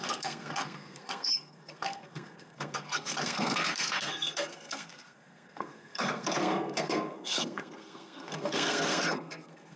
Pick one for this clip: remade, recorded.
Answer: remade